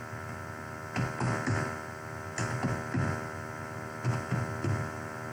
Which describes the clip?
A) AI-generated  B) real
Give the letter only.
B